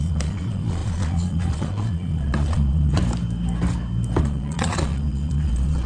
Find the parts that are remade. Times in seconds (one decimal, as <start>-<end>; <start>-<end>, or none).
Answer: 0.0-3.0; 4.2-5.9